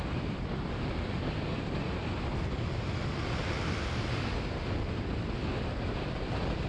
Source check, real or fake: real